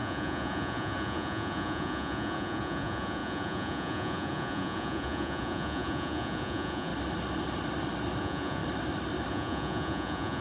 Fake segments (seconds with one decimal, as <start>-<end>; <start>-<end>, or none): 0.0-6.9; 8.2-8.6; 9.3-10.4